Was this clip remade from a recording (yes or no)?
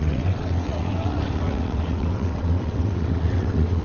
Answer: yes